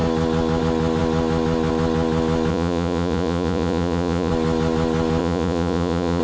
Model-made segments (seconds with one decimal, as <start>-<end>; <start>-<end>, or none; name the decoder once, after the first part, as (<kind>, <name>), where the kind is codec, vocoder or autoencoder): 2.5-4.3 (vocoder, Vocos); 5.2-6.2